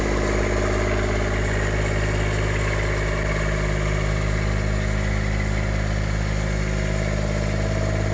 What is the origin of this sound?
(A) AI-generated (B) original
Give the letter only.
B